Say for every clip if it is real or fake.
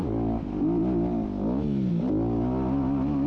real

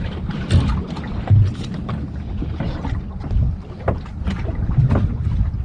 real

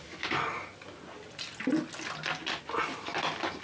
real